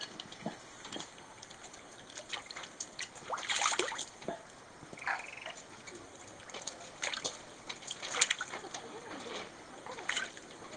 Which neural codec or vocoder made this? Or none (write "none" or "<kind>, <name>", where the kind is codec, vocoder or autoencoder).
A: none